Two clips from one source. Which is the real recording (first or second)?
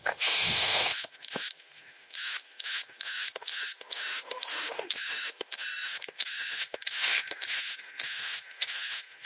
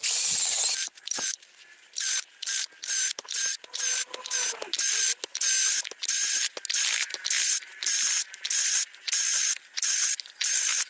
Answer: second